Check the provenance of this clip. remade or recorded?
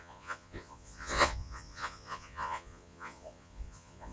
remade